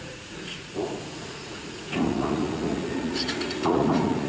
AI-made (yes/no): yes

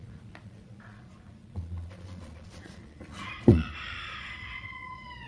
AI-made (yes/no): yes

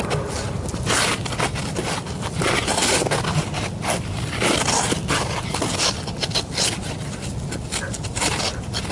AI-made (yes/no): no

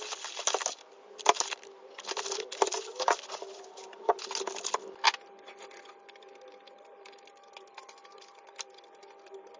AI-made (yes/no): no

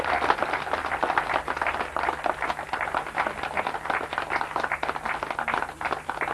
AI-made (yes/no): no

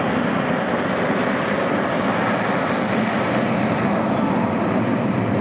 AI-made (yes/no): no